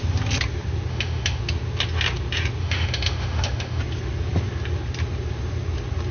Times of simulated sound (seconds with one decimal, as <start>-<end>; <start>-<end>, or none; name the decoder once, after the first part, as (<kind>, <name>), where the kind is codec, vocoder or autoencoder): 0.9-1.4 (autoencoder, DAC-VAE); 2.6-3.8